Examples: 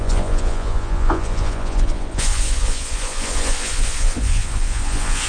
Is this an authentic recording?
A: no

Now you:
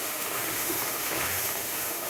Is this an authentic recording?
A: no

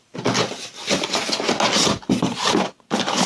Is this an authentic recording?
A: yes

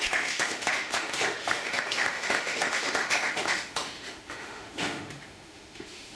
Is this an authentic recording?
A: no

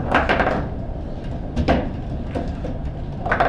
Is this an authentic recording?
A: yes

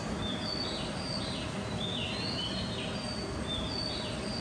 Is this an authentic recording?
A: yes